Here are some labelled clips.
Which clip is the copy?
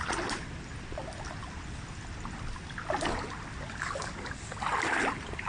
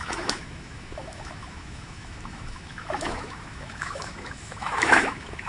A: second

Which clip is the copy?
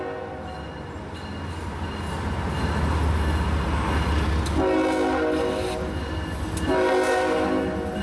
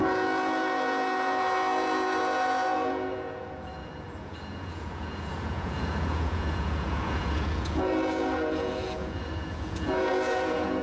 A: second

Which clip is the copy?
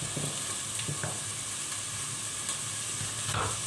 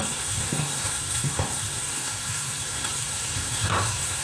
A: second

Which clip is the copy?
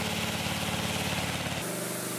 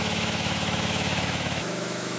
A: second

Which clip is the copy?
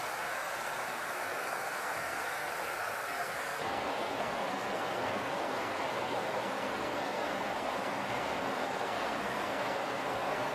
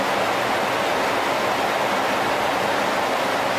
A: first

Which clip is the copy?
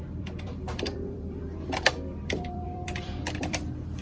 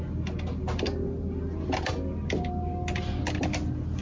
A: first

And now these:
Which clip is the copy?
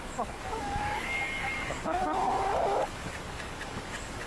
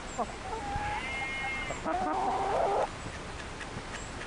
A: first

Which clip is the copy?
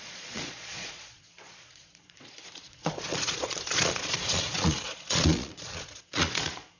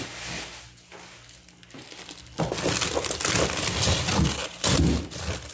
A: first